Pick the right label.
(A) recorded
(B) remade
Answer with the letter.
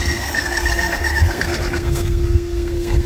B